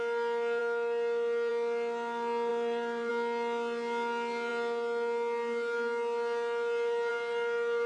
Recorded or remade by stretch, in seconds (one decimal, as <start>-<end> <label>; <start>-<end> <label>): 0.0-2.5 recorded; 2.5-3.1 remade; 3.1-7.9 recorded